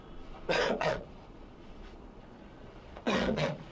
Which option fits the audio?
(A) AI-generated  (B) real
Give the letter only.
A